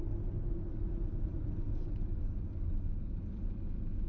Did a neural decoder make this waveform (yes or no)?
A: no